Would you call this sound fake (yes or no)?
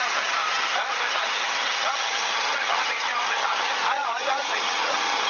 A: yes